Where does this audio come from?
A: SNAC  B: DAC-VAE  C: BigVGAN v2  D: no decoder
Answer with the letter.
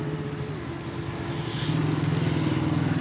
D